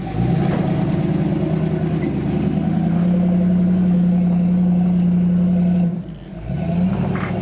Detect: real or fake real